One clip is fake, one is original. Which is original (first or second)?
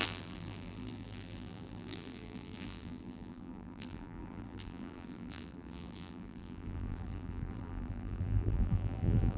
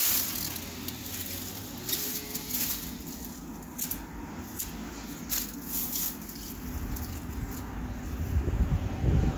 second